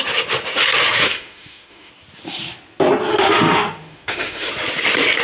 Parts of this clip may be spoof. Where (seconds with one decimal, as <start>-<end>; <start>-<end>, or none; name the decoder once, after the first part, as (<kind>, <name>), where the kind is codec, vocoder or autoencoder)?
1.0-1.9 (autoencoder, DAC-VAE); 3.1-4.5